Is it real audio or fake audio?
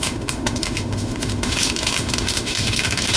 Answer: fake